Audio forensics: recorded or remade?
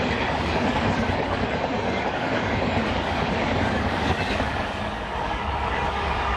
remade